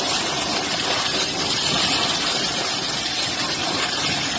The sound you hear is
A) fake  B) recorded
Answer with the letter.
B